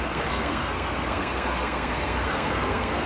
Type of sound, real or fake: fake